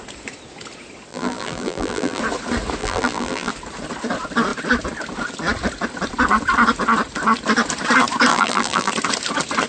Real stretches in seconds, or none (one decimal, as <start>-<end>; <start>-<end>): 0.0-1.1; 2.2-2.8; 3.5-8.3; 8.9-9.7